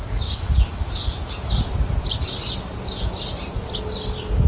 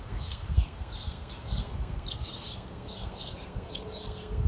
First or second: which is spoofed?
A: second